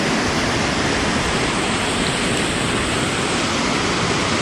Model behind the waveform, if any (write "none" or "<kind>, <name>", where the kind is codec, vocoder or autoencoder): none